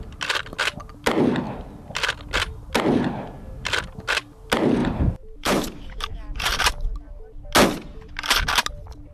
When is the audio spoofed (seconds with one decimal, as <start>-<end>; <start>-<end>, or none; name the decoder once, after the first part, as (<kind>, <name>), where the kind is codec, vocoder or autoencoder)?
4.8-6.6 (vocoder, BigVGAN v2)